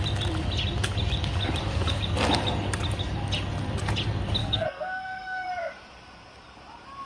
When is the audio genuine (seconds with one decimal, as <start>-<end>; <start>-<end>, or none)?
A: 0.0-4.4; 5.5-7.1